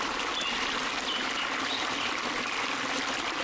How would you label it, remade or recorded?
recorded